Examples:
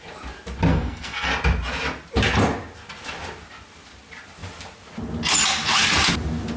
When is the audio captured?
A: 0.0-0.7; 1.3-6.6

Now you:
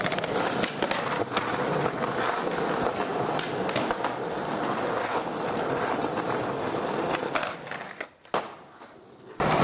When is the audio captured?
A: 0.0-9.6

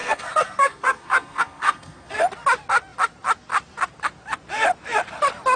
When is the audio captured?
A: 2.2-5.6

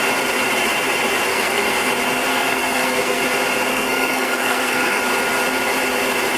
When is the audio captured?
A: 0.0-1.3; 1.9-2.3; 3.2-3.7; 5.0-6.4